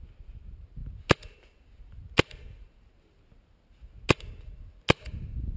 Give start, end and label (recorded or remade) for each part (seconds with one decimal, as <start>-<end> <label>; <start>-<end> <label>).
0.0-5.6 recorded